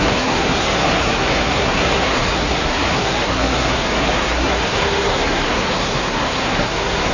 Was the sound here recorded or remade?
remade